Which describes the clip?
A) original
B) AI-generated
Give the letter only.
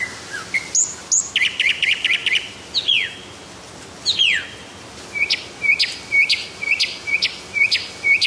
A